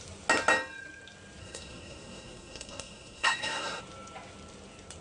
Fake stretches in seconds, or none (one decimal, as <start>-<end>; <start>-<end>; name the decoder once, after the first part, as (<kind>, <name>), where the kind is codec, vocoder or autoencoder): 1.4-3.8 (codec, SNAC)